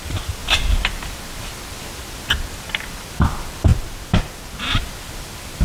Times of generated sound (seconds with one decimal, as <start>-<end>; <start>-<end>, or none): 0.0-0.4; 2.3-3.7; 4.8-5.6